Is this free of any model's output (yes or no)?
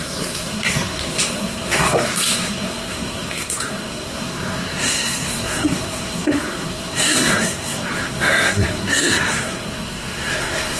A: no